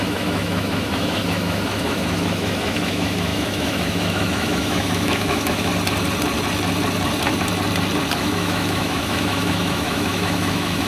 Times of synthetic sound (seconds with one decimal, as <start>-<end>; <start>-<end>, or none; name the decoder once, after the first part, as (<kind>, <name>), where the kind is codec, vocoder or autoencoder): 0.0-5.7 (autoencoder, DAC-VAE); 8.1-10.9